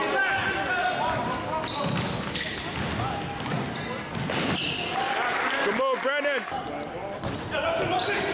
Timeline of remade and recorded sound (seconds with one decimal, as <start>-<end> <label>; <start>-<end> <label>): 0.0-8.3 recorded